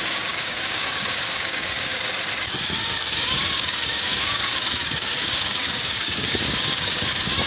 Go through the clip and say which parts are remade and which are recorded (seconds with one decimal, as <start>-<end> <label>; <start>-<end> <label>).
0.0-1.9 remade; 1.9-2.6 recorded; 2.6-7.5 remade